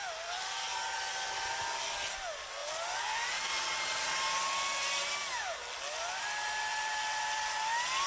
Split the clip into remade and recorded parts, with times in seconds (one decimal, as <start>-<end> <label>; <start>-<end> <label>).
0.0-0.6 remade; 0.6-2.6 recorded; 2.6-3.5 remade; 3.5-6.7 recorded; 6.7-7.5 remade; 7.5-8.1 recorded